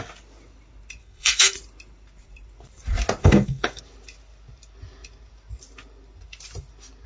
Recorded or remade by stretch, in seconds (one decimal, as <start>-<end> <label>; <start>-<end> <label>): 0.0-1.0 recorded; 1.0-1.5 remade; 1.5-3.2 recorded; 3.2-3.8 remade; 3.8-7.1 recorded